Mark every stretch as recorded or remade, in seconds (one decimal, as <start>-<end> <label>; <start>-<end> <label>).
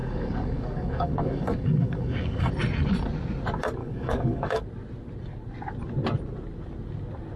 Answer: 0.0-2.5 remade; 2.5-3.8 recorded; 3.8-4.6 remade; 4.6-7.4 recorded